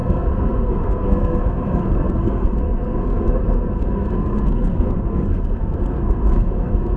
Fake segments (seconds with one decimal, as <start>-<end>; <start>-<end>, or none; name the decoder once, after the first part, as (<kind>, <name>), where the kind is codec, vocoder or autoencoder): 0.0-7.0 (codec, SNAC)

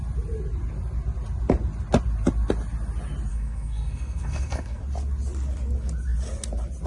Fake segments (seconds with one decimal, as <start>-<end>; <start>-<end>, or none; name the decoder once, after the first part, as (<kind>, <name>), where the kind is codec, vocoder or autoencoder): 3.3-4.8 (codec, SNAC)

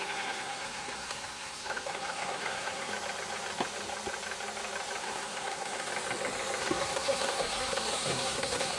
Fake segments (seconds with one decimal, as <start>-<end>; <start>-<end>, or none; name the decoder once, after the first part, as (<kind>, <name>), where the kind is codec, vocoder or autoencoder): 0.0-2.9 (codec, SNAC); 5.0-5.9; 6.6-8.8

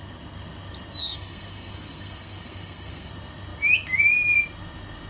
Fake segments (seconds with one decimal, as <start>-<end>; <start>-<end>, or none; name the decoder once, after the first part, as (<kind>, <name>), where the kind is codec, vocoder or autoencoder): 1.0-3.1 (codec, SNAC)